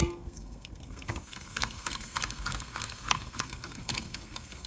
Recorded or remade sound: remade